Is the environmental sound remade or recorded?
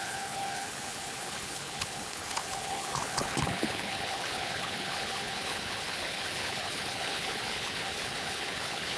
remade